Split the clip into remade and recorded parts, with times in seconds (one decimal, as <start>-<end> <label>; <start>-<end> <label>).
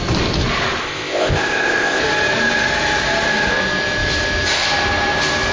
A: 0.0-0.8 recorded; 0.8-2.0 remade; 2.0-5.5 recorded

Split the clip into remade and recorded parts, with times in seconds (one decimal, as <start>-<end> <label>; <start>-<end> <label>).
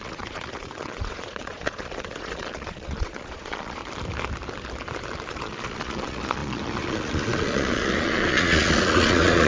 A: 0.0-3.8 remade; 3.8-5.3 recorded; 5.3-9.5 remade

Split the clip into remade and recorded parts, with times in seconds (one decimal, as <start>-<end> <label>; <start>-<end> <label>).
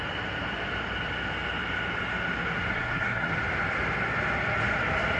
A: 0.0-2.7 recorded; 2.7-3.3 remade; 3.3-5.2 recorded